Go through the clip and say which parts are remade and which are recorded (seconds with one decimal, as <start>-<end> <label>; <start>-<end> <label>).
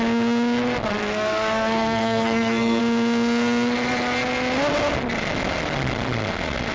0.0-1.0 recorded; 1.0-2.8 remade; 2.8-6.7 recorded